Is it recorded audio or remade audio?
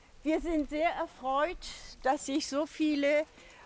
recorded